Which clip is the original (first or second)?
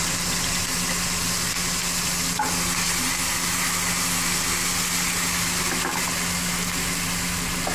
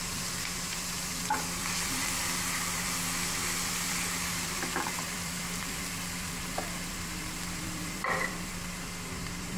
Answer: first